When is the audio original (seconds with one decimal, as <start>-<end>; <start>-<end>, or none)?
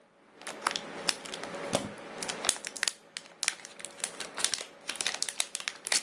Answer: 0.0-6.0